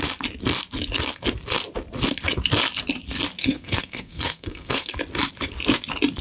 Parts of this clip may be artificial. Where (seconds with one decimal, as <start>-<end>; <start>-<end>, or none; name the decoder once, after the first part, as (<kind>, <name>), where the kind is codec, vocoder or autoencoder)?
3.4-5.0 (codec, SNAC)